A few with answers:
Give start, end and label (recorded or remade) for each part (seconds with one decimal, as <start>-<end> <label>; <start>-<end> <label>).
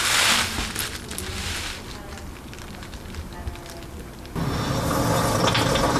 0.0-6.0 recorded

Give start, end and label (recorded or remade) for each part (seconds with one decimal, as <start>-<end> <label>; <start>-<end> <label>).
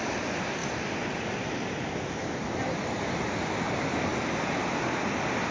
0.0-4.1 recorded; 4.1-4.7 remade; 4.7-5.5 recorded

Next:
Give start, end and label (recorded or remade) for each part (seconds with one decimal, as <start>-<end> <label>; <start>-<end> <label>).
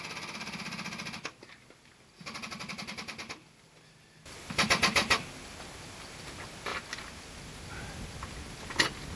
0.0-9.2 recorded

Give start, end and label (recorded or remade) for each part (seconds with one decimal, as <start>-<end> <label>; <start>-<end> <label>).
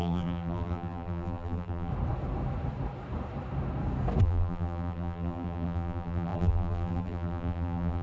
0.0-1.9 remade; 1.9-4.2 recorded; 4.2-8.0 remade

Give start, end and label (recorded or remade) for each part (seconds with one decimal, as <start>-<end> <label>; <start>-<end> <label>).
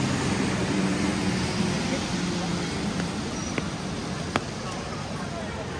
0.0-5.8 recorded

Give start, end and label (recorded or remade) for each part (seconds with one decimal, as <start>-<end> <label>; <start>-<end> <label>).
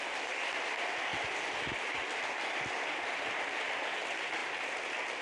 0.0-5.2 recorded